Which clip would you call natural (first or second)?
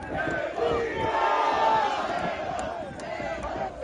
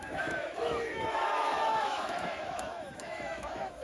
first